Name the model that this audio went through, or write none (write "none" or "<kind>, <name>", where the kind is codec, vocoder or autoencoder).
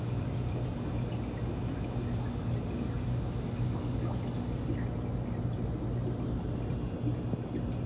none